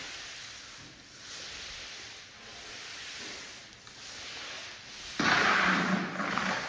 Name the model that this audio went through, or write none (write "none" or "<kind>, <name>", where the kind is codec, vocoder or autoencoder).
none